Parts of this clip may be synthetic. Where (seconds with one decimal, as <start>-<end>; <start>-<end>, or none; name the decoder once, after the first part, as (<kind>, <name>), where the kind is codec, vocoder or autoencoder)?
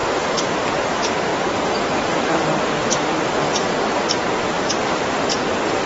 none